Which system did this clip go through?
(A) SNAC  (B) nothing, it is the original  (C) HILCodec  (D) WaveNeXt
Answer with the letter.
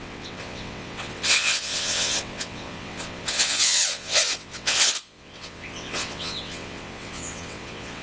D